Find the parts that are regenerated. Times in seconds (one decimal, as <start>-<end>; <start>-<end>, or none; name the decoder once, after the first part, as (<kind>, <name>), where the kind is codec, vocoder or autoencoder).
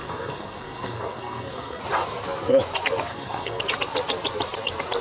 0.0-1.8 (codec, SNAC); 3.1-3.6